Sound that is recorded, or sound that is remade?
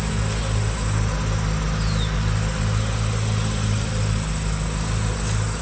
recorded